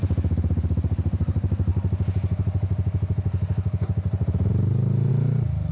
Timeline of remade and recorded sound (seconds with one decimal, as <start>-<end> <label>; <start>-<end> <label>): 0.0-5.7 recorded